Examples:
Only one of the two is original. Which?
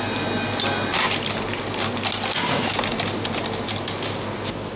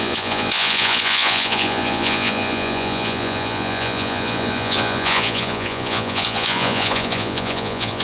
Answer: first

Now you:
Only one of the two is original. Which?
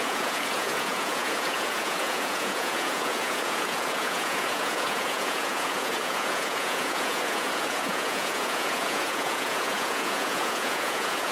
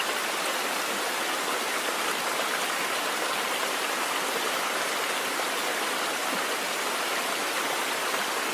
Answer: second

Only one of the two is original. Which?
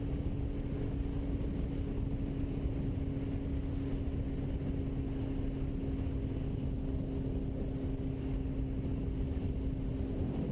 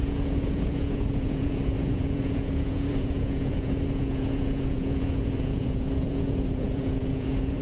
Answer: first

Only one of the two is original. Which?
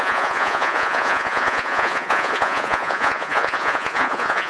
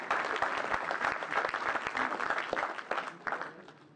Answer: second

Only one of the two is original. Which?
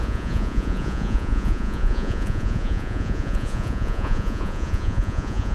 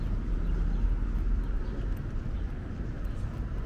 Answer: second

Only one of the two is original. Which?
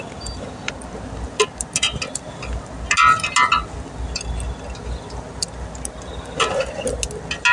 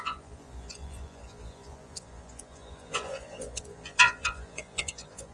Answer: first